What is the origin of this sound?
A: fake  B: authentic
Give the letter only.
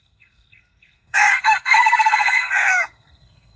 A